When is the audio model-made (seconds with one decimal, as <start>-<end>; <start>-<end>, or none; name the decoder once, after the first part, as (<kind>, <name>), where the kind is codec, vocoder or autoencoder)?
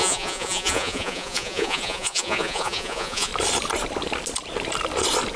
0.0-3.3 (vocoder, Vocos)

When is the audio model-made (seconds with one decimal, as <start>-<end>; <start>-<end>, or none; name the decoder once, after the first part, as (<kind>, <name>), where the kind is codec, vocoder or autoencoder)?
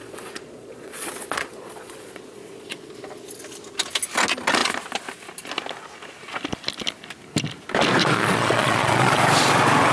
0.0-2.9 (vocoder, Vocos); 8.0-9.2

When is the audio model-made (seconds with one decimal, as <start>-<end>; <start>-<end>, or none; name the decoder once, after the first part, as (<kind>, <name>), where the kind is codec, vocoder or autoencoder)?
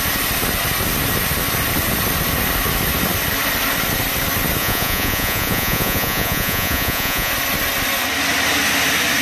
4.6-7.3 (vocoder, Vocos)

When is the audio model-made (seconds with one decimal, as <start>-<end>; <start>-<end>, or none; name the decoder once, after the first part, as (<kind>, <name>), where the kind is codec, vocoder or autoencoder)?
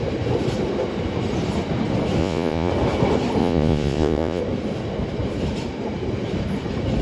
2.2-2.7 (vocoder, Vocos); 3.4-4.4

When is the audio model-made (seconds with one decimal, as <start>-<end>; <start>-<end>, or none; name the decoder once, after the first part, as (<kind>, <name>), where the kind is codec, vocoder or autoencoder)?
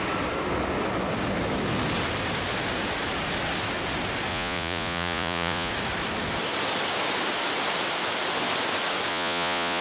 4.3-5.7 (vocoder, Vocos); 9.1-9.8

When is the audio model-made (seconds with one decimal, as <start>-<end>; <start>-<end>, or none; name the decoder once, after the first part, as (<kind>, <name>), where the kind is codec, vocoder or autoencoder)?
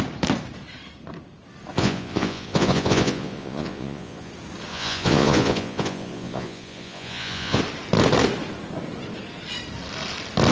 1.7-4.3 (vocoder, Vocos); 4.7-7.6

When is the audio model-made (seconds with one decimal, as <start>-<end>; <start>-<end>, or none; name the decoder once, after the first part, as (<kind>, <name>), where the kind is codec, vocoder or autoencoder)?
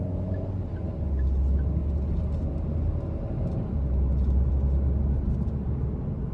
none